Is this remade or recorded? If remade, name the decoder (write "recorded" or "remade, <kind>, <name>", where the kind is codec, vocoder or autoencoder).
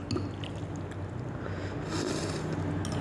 recorded